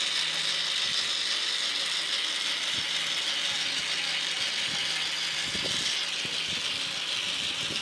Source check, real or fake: real